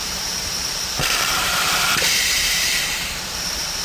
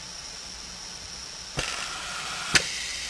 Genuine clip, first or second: second